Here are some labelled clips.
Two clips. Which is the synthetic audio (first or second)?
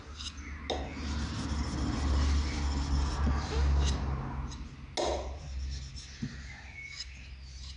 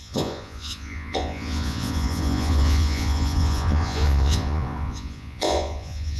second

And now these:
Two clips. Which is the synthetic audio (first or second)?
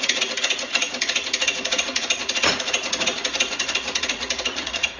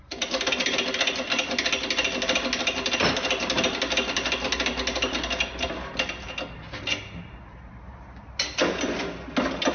first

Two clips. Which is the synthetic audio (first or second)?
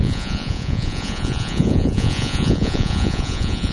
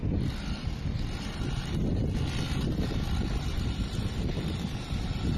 first